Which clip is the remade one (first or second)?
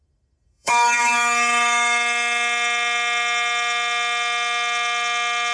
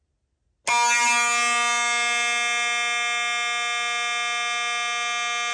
first